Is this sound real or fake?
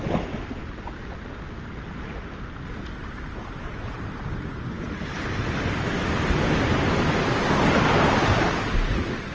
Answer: real